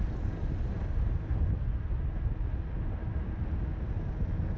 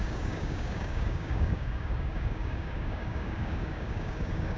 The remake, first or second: second